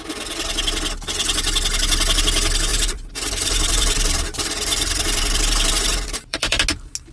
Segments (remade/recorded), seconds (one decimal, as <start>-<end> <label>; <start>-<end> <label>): 0.0-2.7 recorded; 2.7-6.6 remade; 6.6-7.1 recorded